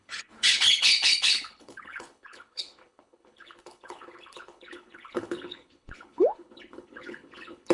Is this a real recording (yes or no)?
no